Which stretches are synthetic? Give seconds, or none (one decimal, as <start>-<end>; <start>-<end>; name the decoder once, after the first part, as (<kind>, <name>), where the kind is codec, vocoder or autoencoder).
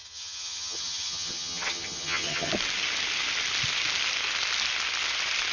0.0-2.5 (vocoder, HiFi-GAN)